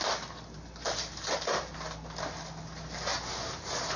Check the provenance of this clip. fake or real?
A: real